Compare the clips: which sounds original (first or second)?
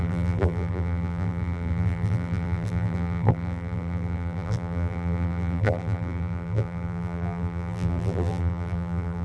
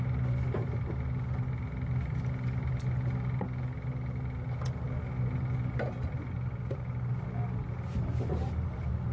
second